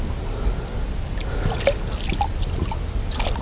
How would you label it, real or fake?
real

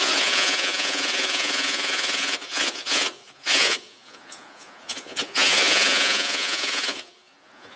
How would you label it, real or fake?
fake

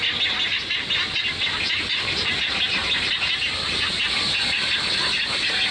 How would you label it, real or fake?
real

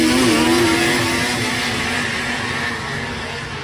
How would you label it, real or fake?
real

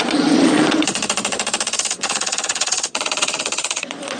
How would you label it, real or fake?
fake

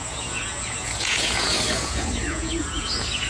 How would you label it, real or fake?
fake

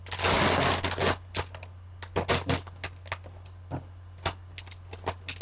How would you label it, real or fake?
real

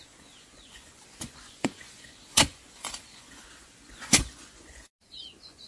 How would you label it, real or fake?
fake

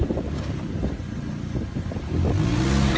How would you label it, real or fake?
real